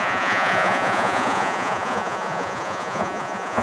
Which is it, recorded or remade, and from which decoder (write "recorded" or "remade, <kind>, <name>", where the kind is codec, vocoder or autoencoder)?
remade, vocoder, Vocos